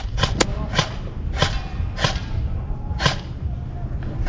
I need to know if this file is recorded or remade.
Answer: recorded